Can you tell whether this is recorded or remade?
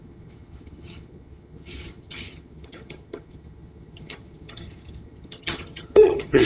remade